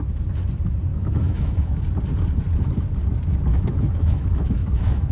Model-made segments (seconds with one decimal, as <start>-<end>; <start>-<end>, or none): 0.9-1.8; 3.5-5.1